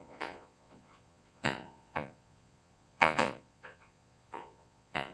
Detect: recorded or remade remade